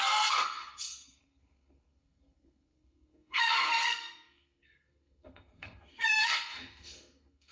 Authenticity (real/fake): fake